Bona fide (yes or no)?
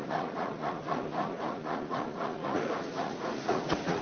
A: no